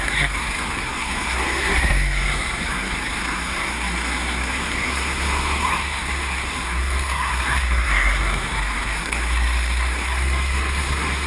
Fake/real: fake